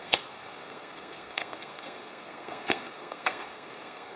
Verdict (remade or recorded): remade